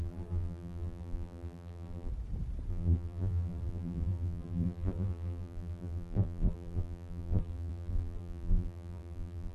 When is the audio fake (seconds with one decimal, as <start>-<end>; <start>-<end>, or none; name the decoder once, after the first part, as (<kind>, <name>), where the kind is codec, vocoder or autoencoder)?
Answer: 0.0-2.1 (vocoder, BigVGAN v2); 2.7-9.5